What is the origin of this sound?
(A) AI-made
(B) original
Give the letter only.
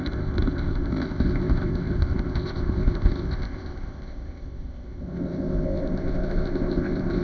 A